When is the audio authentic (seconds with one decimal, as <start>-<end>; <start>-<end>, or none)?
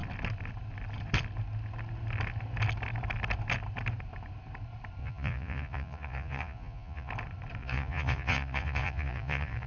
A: 0.0-5.0; 7.1-7.6